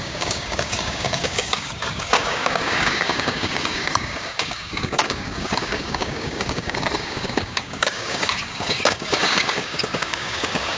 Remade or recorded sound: remade